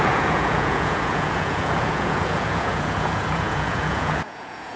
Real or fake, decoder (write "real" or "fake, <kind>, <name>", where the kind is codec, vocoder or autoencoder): fake, vocoder, Vocos